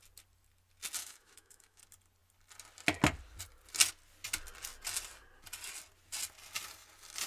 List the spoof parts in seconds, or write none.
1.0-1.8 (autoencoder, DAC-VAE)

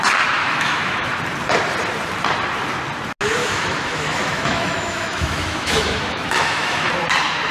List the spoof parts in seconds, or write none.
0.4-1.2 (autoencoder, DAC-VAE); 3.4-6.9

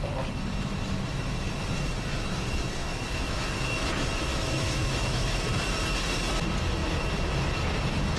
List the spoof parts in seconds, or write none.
2.8-3.4 (autoencoder, DAC-VAE); 4.3-5.5

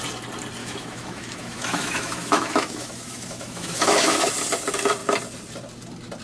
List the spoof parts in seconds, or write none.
0.6-4.3 (autoencoder, DAC-VAE)